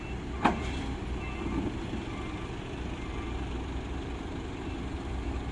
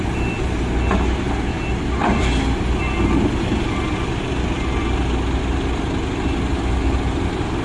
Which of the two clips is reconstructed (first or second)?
first